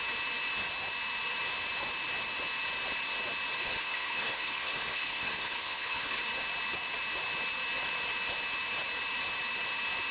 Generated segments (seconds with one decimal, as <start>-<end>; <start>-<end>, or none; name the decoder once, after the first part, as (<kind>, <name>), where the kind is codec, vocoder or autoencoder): 3.6-6.2 (codec, HILCodec)